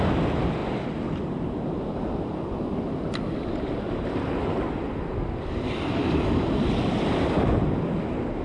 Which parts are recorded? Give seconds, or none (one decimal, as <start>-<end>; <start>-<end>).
0.0-8.4